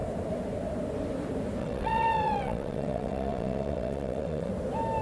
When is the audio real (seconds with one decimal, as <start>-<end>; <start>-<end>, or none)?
0.0-1.6; 4.5-5.0